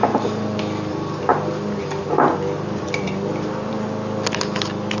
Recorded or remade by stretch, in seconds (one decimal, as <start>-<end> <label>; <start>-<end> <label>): 0.0-5.0 recorded